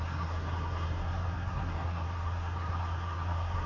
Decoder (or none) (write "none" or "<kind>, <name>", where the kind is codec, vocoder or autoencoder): codec, SNAC